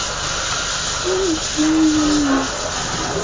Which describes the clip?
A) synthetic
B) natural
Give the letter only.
B